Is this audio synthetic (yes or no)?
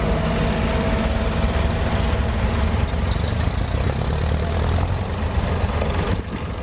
no